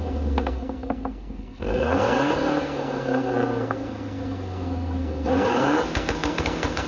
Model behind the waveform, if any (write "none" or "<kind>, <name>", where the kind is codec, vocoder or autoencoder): codec, SNAC